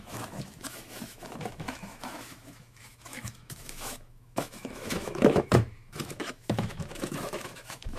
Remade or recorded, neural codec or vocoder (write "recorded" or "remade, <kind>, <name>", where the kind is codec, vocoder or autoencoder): remade, autoencoder, DAC-VAE